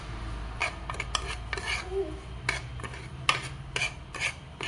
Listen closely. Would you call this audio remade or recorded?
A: recorded